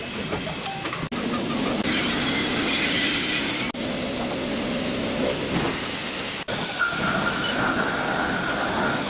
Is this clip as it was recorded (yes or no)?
yes